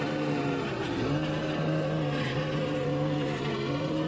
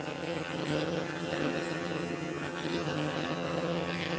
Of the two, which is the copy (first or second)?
second